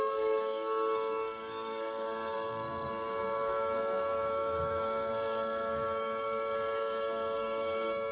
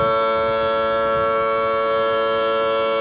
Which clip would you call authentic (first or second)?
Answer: second